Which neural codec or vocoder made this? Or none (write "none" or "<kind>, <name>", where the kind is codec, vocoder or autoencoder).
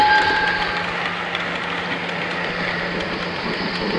none